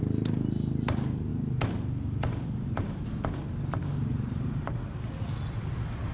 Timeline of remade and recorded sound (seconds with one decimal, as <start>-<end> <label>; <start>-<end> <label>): 0.0-1.3 recorded; 1.3-3.0 remade; 3.0-4.1 recorded; 4.1-4.8 remade; 4.8-6.1 recorded

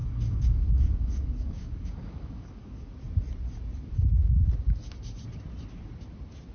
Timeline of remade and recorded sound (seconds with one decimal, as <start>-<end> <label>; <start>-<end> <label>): 0.0-2.9 remade; 2.9-6.5 recorded

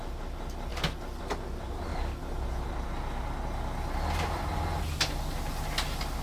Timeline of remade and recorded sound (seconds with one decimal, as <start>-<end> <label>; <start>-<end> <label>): 0.0-6.2 recorded

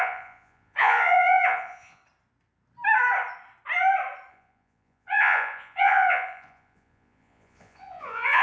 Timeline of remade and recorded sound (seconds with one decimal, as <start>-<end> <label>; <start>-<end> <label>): 0.0-2.0 remade; 2.0-4.3 recorded; 4.3-8.4 remade

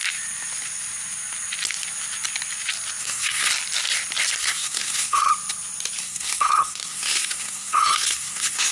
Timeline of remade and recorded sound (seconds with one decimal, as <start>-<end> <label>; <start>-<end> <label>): 0.0-3.0 recorded; 3.0-3.5 remade; 3.5-4.4 recorded; 4.4-5.3 remade; 5.3-6.0 recorded; 6.0-8.7 remade

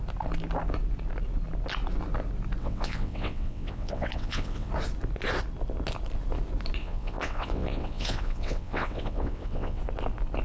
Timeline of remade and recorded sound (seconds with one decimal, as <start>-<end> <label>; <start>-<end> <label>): 0.0-2.6 recorded; 2.6-4.7 remade; 4.7-6.8 recorded; 6.8-9.8 remade; 9.8-10.4 recorded

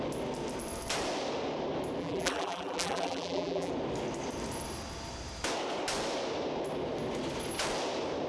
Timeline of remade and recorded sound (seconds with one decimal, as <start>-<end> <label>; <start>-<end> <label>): 0.0-2.0 recorded; 2.0-3.7 remade; 3.7-8.3 recorded

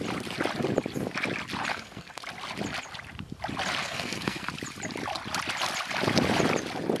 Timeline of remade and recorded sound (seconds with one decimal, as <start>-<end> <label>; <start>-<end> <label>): 0.0-1.7 recorded; 1.7-2.2 remade; 2.2-3.8 recorded; 3.8-4.5 remade; 4.5-7.0 recorded